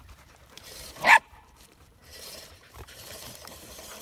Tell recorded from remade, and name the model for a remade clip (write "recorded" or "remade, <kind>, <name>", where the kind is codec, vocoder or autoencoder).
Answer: remade, vocoder, BigVGAN v2